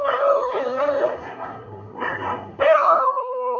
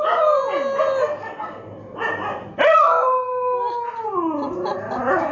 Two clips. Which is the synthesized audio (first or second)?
first